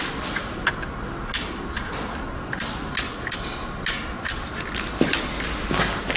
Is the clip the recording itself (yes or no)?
yes